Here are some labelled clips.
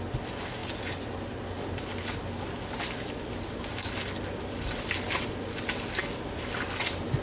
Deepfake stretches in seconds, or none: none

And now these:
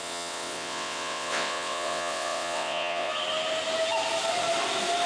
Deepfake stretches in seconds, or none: 0.0-3.1 (vocoder, WaveNeXt)

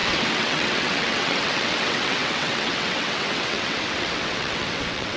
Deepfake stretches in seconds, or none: 0.0-5.2 (vocoder, WaveNeXt)

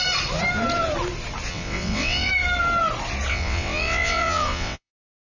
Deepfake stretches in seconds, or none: 1.5-2.3 (vocoder, WaveNeXt); 3.3-4.9

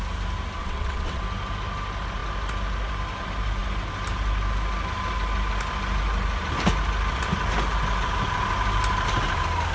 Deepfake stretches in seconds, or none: 0.6-1.2 (vocoder, WaveNeXt)